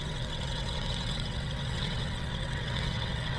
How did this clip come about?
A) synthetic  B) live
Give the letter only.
A